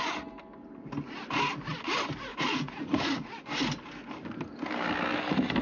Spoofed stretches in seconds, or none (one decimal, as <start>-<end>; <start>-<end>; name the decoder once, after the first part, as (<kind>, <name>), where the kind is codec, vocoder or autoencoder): 2.3-3.4 (vocoder, Vocos)